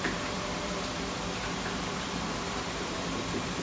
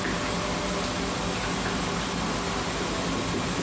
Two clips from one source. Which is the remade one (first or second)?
first